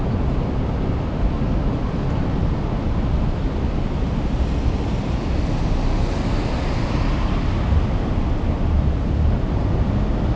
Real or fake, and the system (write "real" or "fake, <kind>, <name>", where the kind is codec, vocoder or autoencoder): real